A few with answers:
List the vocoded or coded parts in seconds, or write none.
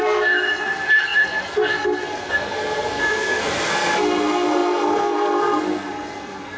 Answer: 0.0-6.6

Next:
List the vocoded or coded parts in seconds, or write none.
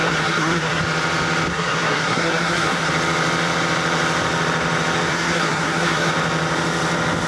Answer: 0.0-0.8; 1.5-2.9; 5.1-6.1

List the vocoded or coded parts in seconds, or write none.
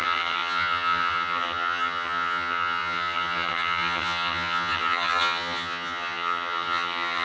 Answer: 0.0-7.2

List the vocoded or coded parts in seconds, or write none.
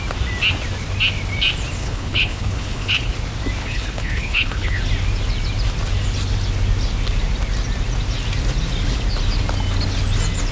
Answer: 1.8-3.1; 3.6-4.8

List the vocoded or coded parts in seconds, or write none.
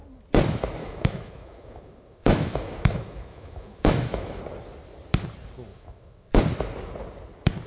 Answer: 0.8-4.4; 5.7-6.4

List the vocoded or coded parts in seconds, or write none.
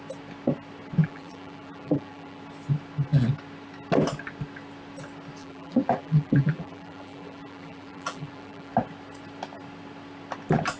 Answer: 1.0-2.4; 5.4-8.7